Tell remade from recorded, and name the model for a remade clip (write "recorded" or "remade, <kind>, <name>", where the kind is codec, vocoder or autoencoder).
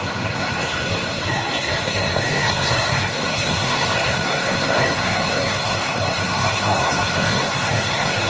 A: remade, codec, SNAC